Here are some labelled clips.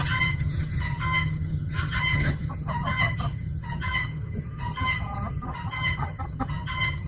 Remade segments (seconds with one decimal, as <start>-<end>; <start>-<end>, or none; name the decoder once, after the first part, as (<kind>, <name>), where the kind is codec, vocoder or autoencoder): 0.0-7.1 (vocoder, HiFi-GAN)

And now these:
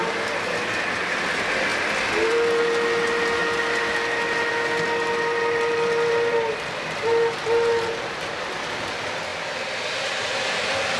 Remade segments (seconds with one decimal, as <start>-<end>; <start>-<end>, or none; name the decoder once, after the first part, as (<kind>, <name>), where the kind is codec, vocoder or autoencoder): none

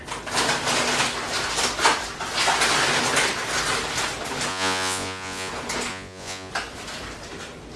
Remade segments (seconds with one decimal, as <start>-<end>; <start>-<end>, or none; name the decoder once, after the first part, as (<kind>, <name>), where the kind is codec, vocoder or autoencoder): 4.5-5.5 (vocoder, Vocos); 5.9-6.5

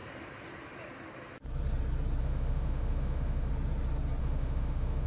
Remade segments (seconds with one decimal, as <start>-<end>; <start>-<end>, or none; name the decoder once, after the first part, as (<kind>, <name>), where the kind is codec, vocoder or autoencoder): 2.2-3.5 (autoencoder, DAC-VAE); 4.2-5.1

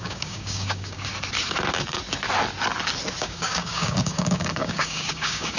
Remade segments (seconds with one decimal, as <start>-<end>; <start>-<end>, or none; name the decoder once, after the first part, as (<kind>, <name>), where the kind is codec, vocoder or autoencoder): 0.0-1.1 (codec, DAC); 3.2-5.6

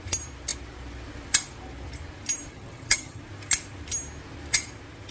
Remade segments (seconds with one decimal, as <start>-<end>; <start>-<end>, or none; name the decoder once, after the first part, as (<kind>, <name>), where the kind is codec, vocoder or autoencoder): 2.5-3.2 (vocoder, HiFi-GAN)

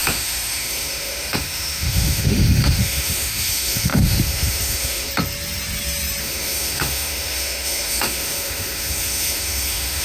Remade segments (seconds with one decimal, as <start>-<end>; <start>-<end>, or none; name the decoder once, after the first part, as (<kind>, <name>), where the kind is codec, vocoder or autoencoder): 0.0-5.1 (autoencoder, DAC-VAE); 6.2-10.0